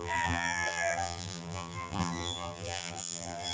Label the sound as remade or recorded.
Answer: remade